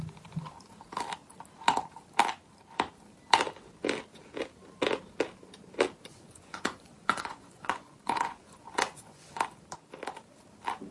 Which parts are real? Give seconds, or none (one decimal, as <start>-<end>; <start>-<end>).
0.0-6.1; 9.4-10.9